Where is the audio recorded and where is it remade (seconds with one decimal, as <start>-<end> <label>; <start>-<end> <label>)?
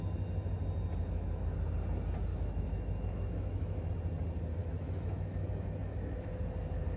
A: 0.0-2.3 recorded; 2.3-3.9 remade; 3.9-4.6 recorded; 4.6-6.3 remade; 6.3-7.0 recorded